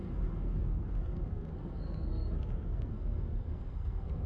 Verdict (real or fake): fake